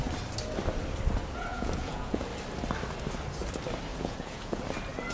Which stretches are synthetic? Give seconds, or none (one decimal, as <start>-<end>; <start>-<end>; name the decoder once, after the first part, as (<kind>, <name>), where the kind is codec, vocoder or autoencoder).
1.5-2.3 (vocoder, Vocos); 3.9-4.6